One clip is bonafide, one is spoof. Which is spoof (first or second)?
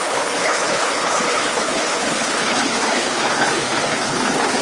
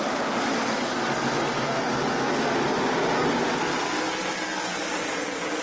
first